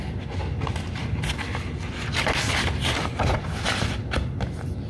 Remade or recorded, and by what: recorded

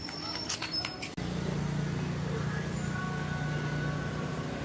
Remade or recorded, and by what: recorded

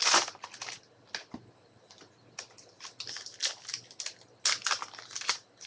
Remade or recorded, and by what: recorded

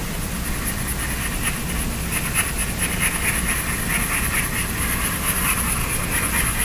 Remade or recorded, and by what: recorded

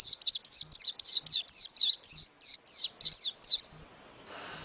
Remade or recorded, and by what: recorded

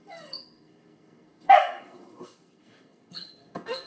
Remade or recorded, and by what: remade, codec, SNAC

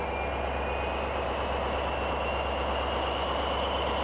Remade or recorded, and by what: recorded